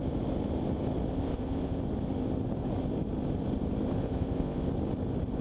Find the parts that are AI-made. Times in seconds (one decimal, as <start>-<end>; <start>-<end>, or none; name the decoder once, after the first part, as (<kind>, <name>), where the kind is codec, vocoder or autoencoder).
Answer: 1.1-1.8 (codec, ZipCodec); 4.0-4.7